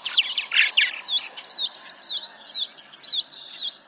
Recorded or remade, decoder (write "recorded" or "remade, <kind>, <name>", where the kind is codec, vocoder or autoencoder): recorded